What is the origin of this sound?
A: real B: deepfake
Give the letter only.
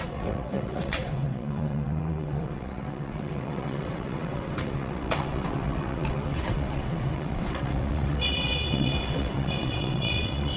B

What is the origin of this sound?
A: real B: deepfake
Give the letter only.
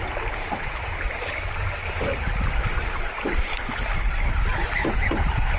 A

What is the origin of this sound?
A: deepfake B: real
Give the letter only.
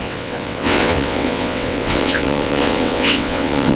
A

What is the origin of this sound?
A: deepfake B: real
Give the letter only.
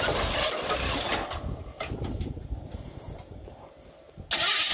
B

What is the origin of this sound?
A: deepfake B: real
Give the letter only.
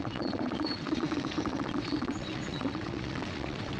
A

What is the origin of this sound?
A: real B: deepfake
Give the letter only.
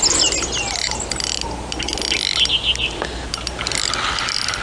A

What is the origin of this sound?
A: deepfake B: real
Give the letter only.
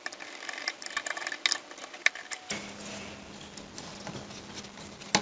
B